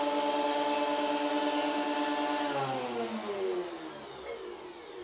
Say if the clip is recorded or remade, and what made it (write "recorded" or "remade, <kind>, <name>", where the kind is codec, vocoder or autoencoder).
recorded